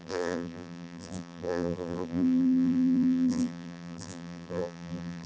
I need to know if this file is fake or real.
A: fake